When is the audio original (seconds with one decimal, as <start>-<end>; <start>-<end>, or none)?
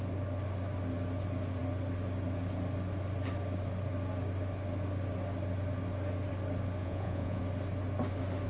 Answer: 0.0-6.8; 7.4-8.5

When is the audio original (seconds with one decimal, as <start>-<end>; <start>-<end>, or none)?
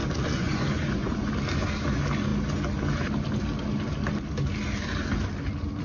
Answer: 1.3-5.8